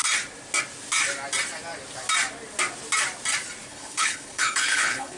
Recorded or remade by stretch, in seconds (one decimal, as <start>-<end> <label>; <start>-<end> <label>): 0.0-3.7 recorded; 3.7-5.2 remade